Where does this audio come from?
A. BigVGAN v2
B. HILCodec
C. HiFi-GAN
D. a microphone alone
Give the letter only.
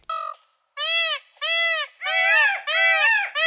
D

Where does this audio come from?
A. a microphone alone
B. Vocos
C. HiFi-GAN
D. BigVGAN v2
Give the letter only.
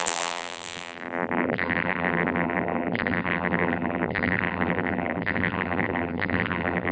D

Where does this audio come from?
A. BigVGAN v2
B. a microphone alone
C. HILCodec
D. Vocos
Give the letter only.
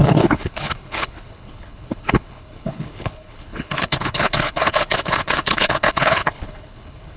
C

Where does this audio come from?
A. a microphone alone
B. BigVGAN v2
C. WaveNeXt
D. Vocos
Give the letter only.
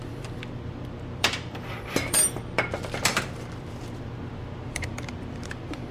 B